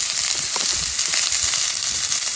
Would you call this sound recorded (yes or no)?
yes